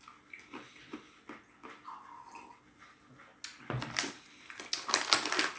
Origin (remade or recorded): recorded